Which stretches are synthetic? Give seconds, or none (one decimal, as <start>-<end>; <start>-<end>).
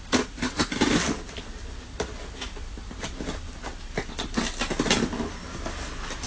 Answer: none